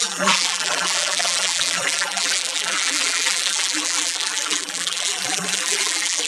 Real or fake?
fake